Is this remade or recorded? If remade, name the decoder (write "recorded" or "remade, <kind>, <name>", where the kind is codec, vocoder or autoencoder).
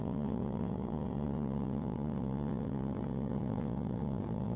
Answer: remade, vocoder, WaveNeXt